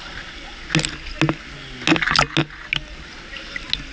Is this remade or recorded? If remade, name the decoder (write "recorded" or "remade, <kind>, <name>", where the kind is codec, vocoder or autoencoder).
recorded